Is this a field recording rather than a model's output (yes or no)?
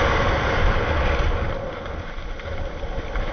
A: yes